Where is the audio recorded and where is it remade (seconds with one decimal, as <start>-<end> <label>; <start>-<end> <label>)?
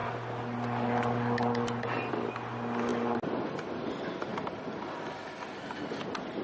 0.0-6.4 recorded